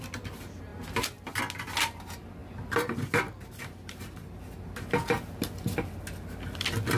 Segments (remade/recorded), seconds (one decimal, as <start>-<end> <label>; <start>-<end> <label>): 0.0-7.0 recorded